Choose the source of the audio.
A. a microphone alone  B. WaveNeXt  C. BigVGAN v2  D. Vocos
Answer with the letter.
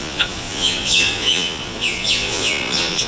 D